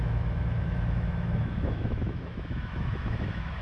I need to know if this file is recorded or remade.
remade